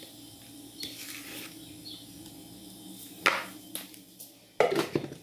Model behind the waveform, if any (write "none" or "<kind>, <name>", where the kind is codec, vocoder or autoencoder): none